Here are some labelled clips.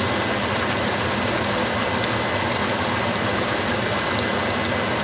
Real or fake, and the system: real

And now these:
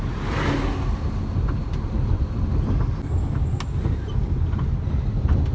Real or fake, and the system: real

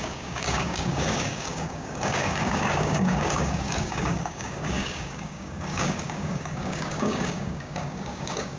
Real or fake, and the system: fake, codec, DAC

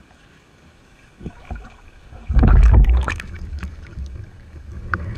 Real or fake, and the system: fake, codec, DAC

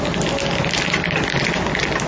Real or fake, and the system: real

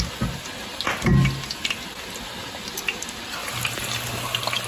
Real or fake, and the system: real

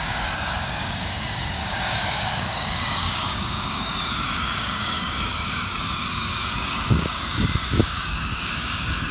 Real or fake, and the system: fake, codec, DAC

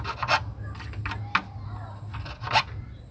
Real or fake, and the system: real